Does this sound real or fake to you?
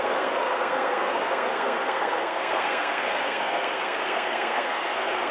fake